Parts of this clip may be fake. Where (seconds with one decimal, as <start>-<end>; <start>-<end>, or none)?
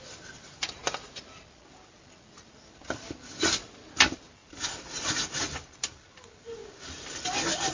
none